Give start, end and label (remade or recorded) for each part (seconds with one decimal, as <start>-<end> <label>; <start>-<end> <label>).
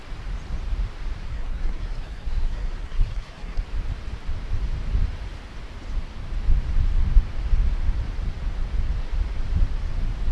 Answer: 0.0-1.3 recorded; 1.3-3.6 remade; 3.6-10.3 recorded